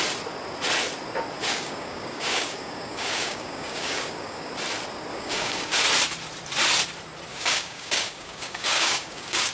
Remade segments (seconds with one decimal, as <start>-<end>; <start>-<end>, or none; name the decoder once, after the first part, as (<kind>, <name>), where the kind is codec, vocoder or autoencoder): 1.4-4.5 (codec, DAC); 5.1-5.8; 7.3-9.5